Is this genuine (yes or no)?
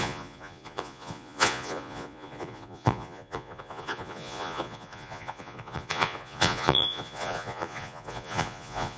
no